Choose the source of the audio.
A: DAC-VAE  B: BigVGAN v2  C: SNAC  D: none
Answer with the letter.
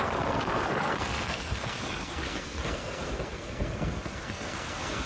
C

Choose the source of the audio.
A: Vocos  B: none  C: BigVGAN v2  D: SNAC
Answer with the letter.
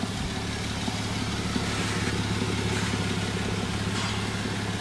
B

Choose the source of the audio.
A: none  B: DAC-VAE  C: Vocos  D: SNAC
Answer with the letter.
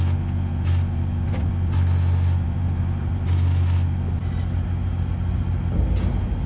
A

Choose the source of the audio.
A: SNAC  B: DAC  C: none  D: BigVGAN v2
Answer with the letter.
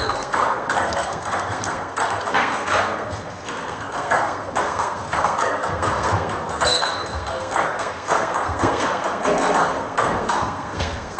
A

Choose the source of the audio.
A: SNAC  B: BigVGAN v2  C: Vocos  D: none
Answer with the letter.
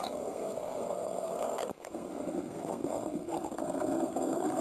A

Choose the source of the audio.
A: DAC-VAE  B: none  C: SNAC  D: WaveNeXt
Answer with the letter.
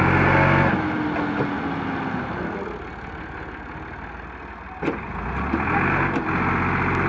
B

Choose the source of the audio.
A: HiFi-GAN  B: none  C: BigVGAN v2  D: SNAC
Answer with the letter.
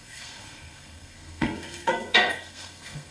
D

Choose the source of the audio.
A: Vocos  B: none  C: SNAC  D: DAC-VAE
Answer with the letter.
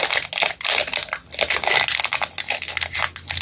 B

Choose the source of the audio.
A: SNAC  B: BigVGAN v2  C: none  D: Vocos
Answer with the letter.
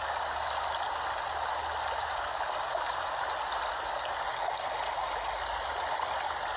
C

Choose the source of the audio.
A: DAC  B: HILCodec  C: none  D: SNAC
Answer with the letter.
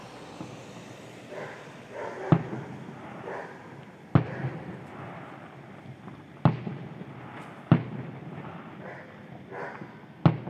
C